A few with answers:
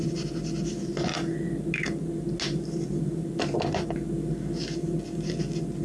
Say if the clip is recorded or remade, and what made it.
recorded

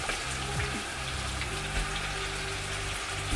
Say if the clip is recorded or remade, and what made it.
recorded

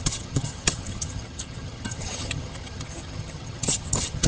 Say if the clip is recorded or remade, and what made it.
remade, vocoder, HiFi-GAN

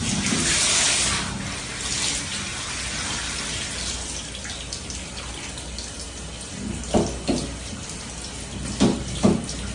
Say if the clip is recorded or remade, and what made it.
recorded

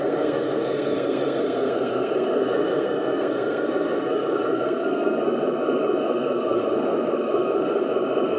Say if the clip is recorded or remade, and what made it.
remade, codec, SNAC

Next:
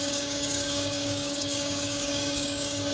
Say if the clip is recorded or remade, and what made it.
remade, codec, DAC